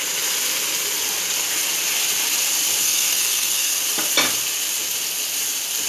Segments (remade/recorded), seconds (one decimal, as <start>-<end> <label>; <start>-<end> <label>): 0.0-2.8 recorded; 2.8-3.8 remade; 3.8-5.9 recorded